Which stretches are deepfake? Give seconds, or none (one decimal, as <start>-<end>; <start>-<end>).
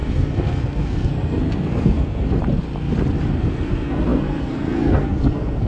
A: 0.0-2.4; 3.4-5.7